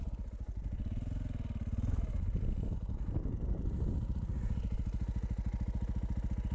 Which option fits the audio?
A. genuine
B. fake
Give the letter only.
A